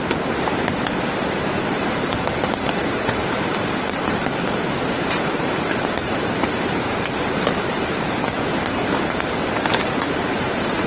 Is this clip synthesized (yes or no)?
yes